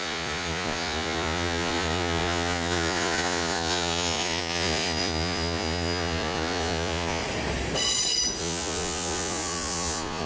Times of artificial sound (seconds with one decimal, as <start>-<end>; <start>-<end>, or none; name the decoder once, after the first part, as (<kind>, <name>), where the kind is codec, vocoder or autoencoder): 0.0-7.2 (vocoder, Vocos); 8.4-10.3